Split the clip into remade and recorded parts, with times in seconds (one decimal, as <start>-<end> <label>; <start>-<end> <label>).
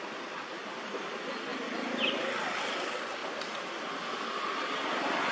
0.0-3.2 recorded; 3.2-4.1 remade; 4.1-5.3 recorded